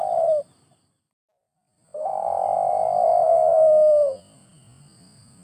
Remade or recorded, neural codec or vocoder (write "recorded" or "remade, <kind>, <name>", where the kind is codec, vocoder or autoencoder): recorded